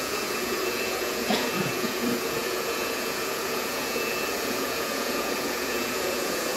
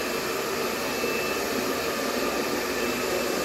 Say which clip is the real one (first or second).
second